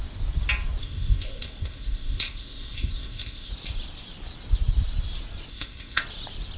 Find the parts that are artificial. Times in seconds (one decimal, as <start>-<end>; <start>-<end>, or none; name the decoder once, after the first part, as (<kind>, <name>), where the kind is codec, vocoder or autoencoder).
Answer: 0.8-3.5 (codec, ZipCodec); 5.5-6.0